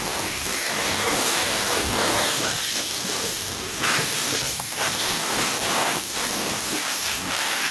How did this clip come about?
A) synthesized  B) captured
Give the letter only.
A